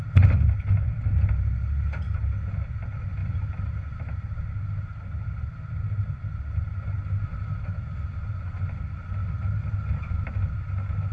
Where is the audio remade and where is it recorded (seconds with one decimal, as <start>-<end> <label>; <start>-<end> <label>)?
0.0-11.1 recorded